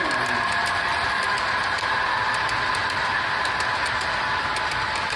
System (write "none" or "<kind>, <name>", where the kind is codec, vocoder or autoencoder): none